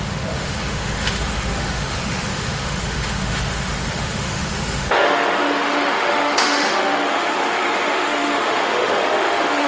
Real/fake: fake